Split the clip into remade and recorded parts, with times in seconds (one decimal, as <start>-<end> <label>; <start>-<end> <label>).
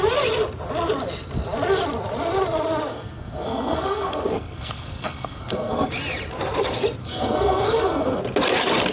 0.0-2.9 recorded; 2.9-5.9 remade; 5.9-7.0 recorded; 7.0-8.2 remade; 8.2-8.9 recorded